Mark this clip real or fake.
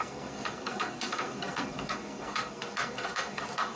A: fake